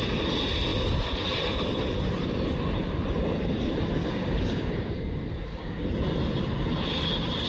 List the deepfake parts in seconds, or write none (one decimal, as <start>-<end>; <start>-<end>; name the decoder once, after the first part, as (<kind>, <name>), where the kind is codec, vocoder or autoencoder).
4.0-5.8 (codec, DAC)